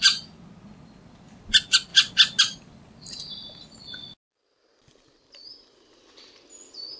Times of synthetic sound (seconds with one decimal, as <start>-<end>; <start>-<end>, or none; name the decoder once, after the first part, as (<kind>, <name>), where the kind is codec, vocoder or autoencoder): none